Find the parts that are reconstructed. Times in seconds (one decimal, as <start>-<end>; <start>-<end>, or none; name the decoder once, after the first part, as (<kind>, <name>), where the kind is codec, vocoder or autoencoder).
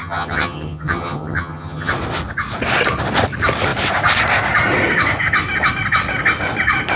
0.0-1.9 (vocoder, HiFi-GAN)